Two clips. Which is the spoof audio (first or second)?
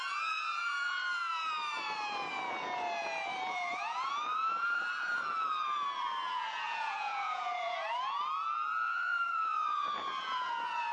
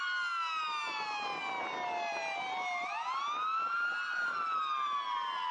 first